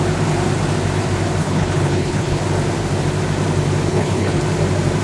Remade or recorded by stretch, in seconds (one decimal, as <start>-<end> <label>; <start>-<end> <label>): 0.0-1.4 recorded; 1.4-2.4 remade; 2.4-3.9 recorded; 3.9-4.4 remade; 4.4-5.0 recorded